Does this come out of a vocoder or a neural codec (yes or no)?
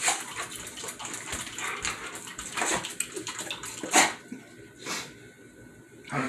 no